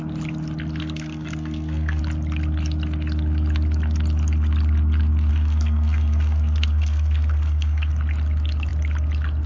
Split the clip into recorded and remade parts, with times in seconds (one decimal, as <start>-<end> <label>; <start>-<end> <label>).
0.0-0.8 recorded; 0.8-2.0 remade; 2.0-5.3 recorded; 5.3-7.9 remade; 7.9-9.5 recorded